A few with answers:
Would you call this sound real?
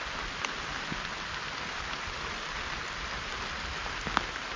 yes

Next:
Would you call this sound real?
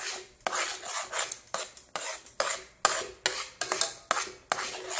yes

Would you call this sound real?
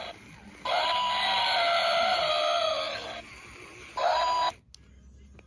yes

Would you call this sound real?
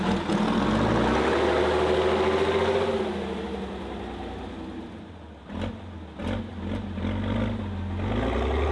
yes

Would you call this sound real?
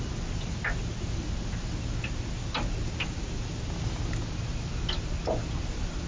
yes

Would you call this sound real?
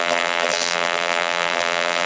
no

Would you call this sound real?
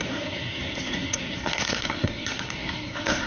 no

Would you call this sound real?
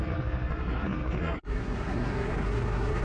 no